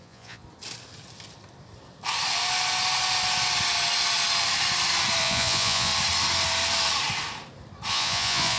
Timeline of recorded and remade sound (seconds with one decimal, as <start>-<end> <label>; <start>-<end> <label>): 0.0-0.4 remade; 0.4-5.2 recorded; 5.2-5.9 remade; 5.9-7.9 recorded; 7.9-8.6 remade